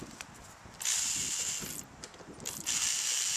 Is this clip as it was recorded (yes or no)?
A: yes